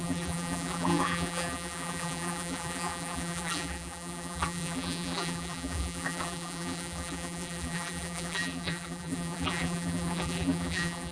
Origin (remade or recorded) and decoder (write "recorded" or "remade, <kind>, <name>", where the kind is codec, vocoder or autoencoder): remade, vocoder, BigVGAN v2